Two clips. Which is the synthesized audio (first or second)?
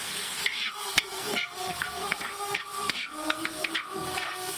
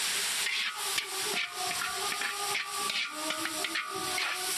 first